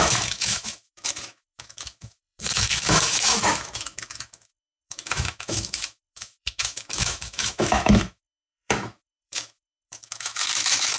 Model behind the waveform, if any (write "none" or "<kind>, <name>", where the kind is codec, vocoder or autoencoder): autoencoder, DAC-VAE